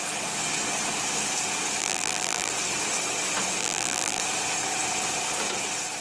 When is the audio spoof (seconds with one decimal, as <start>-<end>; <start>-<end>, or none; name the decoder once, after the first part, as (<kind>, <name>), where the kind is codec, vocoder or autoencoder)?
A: 1.8-2.5 (vocoder, BigVGAN v2); 3.6-4.2